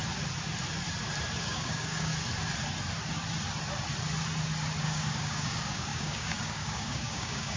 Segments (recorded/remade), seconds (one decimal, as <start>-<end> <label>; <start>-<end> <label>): 0.0-1.4 recorded; 1.4-2.1 remade; 2.1-4.8 recorded; 4.8-7.6 remade